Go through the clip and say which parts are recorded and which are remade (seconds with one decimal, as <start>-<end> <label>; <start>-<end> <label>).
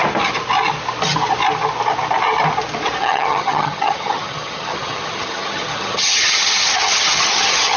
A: 0.0-3.0 recorded; 3.0-7.8 remade